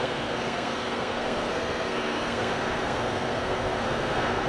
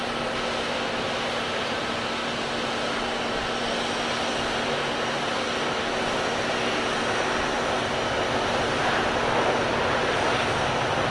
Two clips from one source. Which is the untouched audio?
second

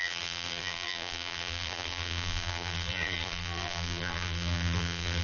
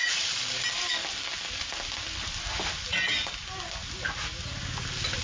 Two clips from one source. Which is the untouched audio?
second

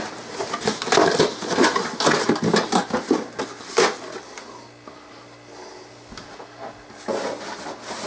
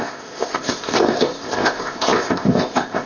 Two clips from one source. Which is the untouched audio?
first